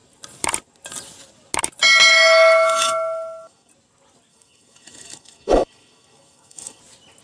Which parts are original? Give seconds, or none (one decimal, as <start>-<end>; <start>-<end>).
0.0-2.1; 3.7-4.3; 6.8-7.2